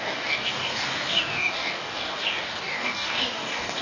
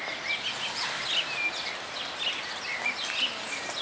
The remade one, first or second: first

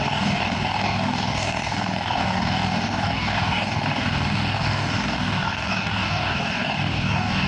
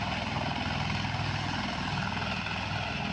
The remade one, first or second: first